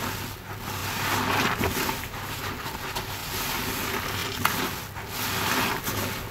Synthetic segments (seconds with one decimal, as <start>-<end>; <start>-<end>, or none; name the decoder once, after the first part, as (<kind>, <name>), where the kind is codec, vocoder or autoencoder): none